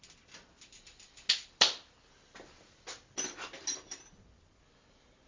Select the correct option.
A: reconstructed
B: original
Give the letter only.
B